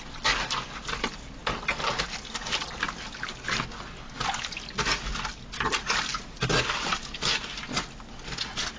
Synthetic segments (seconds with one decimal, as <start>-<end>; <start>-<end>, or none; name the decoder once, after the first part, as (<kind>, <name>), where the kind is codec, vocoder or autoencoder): none